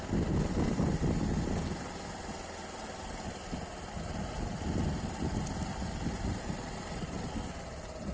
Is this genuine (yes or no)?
yes